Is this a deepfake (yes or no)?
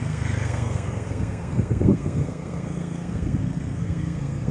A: yes